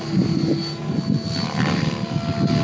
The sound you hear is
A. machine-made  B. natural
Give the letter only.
B